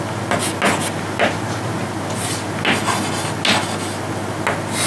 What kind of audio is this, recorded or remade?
recorded